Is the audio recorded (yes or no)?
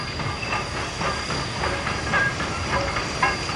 yes